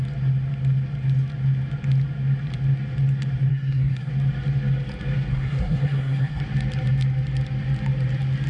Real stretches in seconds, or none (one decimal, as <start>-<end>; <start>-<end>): 0.0-3.5; 4.1-5.3; 6.4-8.5

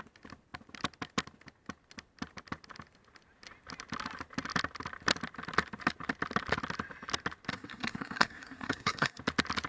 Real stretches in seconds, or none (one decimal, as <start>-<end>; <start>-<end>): 0.0-7.5; 9.2-9.7

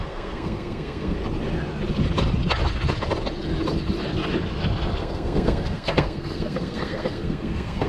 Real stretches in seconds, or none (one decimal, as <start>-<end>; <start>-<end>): 1.2-5.0

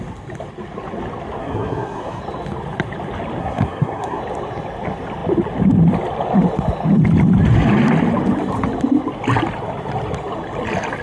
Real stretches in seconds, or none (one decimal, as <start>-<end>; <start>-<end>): 0.0-1.4; 2.2-3.4; 4.2-11.0

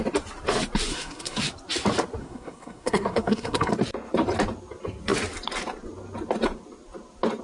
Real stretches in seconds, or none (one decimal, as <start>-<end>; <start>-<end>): 0.0-0.9; 1.4-2.2; 3.7-7.4